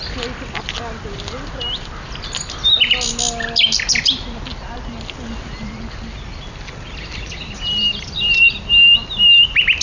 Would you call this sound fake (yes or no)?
no